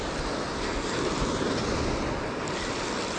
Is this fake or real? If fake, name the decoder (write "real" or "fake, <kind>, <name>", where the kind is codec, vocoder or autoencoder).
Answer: real